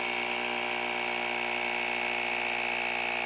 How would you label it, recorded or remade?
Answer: recorded